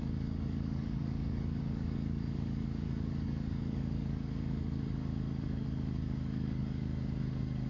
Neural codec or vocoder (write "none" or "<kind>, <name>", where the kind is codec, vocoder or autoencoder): codec, DAC